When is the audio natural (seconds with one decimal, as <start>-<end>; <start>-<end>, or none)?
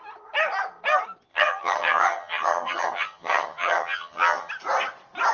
0.0-1.3; 4.5-5.3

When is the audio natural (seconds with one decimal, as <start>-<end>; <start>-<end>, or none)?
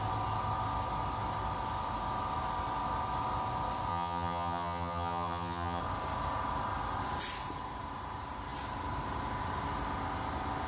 0.0-3.9; 5.8-10.7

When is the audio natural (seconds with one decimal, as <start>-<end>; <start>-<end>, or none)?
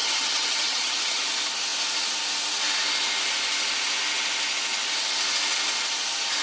1.2-6.4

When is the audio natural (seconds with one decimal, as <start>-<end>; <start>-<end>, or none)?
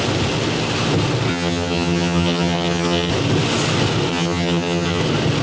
0.0-1.3; 3.1-4.1; 5.0-5.4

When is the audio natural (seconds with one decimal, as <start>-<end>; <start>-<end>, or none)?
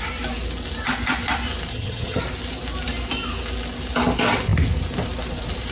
0.0-1.7; 2.2-5.7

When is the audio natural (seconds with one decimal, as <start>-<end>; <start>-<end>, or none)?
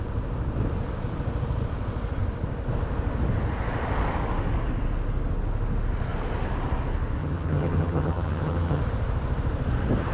0.0-7.2; 8.8-10.1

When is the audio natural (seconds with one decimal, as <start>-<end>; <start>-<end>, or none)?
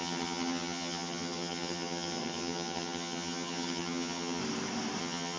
4.4-5.0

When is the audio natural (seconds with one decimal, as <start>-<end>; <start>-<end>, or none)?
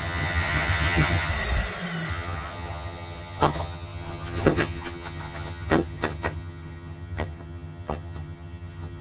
1.3-2.1